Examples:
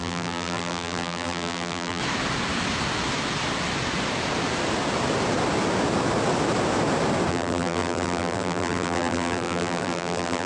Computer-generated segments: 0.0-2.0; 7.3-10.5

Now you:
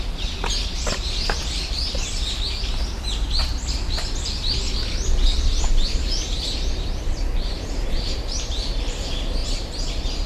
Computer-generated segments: 5.3-8.8; 9.4-10.3